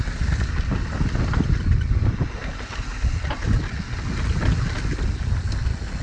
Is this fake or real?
real